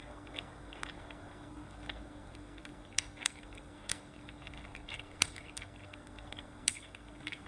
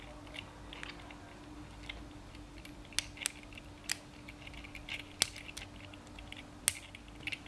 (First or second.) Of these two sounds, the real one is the second